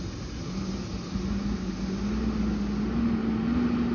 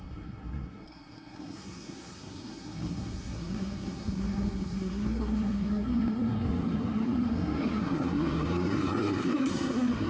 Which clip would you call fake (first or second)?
second